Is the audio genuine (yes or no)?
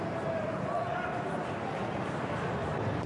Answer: yes